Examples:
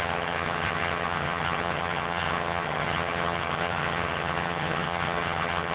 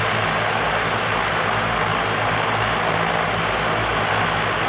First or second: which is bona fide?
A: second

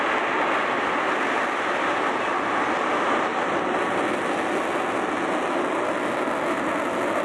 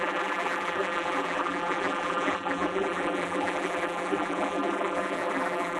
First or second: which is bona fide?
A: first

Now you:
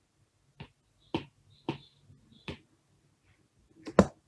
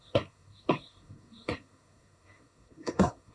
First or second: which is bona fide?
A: first